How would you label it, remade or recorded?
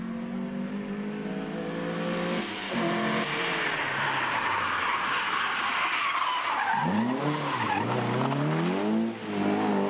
recorded